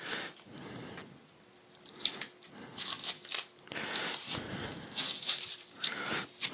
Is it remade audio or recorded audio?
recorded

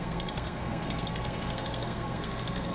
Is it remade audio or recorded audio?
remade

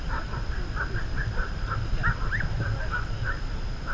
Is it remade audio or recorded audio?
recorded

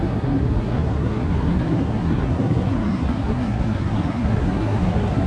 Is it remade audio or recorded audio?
remade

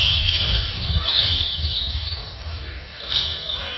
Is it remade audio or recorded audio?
remade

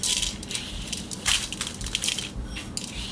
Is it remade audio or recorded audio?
recorded